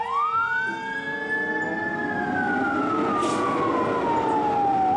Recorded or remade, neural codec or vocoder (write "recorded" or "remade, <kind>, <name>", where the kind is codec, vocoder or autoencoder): recorded